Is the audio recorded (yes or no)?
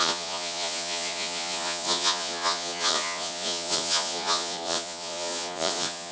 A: no